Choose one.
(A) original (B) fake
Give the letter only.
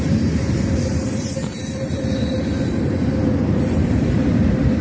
B